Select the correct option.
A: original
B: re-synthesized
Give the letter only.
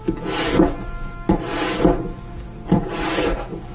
A